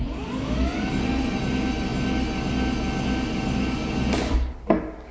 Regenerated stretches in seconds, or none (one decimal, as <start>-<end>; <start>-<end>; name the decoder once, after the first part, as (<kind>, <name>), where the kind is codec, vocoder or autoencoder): none